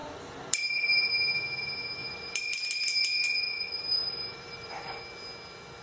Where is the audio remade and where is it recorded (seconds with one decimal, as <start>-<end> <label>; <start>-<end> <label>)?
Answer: 0.0-1.1 remade; 1.1-2.0 recorded; 2.0-5.0 remade; 5.0-5.8 recorded